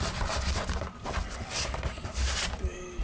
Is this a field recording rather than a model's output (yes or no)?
yes